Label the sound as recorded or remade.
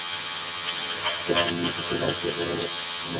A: remade